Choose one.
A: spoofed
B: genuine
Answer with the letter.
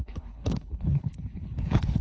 A